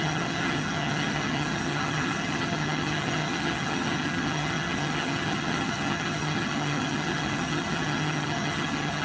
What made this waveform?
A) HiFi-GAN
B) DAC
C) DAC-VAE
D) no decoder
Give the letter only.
A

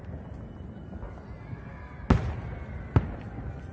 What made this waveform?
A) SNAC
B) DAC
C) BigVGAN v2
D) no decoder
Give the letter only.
D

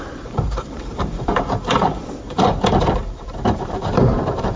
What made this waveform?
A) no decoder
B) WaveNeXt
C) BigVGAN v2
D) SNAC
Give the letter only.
C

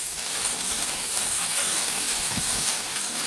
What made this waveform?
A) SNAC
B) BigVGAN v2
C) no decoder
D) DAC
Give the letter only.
D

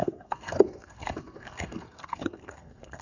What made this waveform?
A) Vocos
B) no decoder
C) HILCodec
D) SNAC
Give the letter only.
D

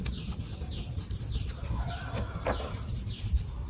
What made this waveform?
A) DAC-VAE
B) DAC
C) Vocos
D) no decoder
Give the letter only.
D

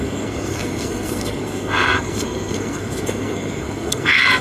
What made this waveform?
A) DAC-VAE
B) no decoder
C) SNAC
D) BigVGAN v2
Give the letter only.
C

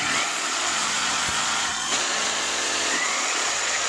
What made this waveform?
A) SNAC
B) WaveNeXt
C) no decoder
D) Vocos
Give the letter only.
D